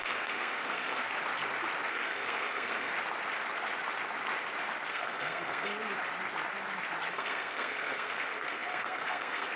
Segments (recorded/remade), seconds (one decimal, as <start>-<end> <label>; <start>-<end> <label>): 0.0-1.0 remade; 1.0-1.9 recorded; 1.9-2.9 remade; 2.9-4.9 recorded; 4.9-5.7 remade; 5.7-7.1 recorded; 7.1-9.6 remade